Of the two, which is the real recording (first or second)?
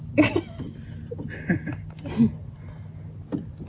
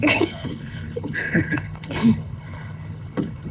first